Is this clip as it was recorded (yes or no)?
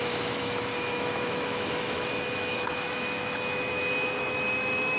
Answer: no